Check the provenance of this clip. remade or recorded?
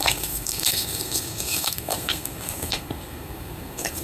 remade